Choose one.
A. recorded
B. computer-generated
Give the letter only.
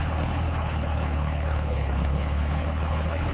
B